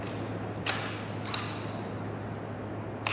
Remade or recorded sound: recorded